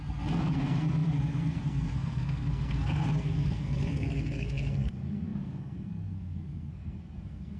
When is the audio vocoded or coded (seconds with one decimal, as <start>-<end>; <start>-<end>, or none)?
0.0-7.6